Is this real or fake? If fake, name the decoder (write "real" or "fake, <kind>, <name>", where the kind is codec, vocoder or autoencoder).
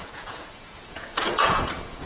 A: fake, vocoder, Vocos